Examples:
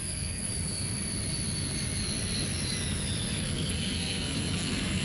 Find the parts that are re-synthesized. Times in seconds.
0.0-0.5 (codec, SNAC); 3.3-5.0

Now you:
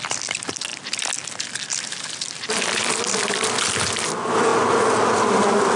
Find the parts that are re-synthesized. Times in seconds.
none

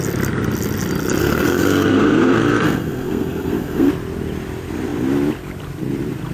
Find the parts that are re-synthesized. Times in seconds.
1.2-3.9 (codec, SNAC)

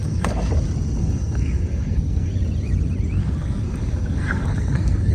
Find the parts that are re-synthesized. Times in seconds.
0.0-0.5 (codec, SNAC); 1.0-2.3; 3.2-5.1

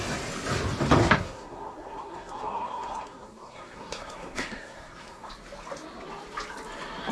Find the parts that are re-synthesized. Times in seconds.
1.0-5.3 (codec, SNAC)

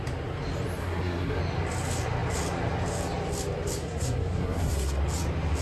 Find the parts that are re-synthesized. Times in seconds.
0.8-1.4 (codec, SNAC); 3.8-5.0

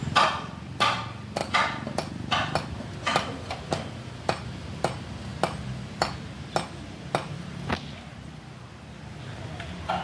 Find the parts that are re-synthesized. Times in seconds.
none

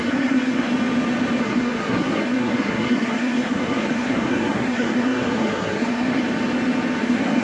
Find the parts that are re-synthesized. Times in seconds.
0.0-0.7 (codec, SNAC); 1.4-6.2; 7.0-7.4